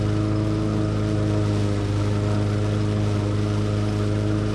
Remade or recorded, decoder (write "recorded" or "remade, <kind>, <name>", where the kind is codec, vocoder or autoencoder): recorded